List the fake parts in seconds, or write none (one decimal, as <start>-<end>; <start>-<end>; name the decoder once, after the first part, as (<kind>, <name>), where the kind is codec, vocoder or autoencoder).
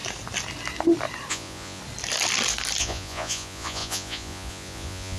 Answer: 1.3-1.8 (vocoder, Vocos); 2.8-5.2